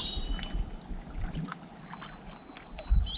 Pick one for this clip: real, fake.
real